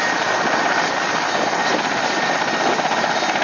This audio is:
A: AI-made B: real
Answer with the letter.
B